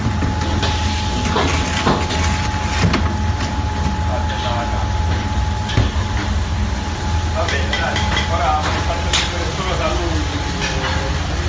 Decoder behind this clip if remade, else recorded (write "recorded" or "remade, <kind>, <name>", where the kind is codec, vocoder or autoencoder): recorded